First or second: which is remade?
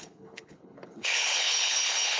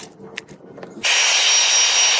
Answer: first